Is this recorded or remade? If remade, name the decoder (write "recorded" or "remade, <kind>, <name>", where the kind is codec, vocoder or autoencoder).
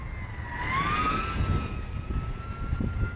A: recorded